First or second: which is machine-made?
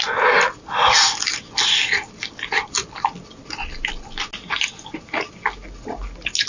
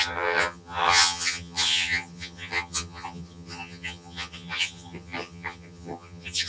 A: second